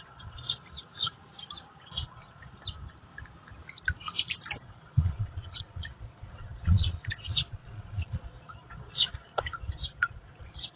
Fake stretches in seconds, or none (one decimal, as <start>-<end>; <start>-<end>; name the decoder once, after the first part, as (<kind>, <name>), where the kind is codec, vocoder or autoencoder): 0.0-0.6 (vocoder, Vocos); 1.9-2.5; 4.6-10.8